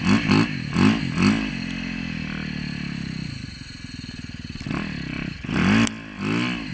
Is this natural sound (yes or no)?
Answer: yes